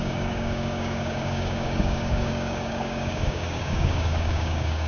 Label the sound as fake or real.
fake